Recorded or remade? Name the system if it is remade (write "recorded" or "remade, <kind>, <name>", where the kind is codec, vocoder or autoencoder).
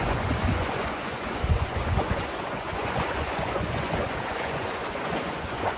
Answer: remade, vocoder, Vocos